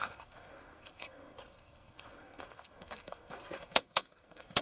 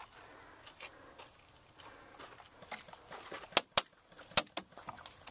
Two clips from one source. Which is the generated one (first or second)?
first